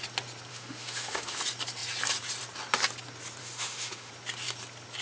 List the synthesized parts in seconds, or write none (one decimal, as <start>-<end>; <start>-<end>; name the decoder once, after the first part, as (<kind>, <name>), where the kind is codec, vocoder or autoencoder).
0.5-1.4 (autoencoder, DAC-VAE); 3.4-4.1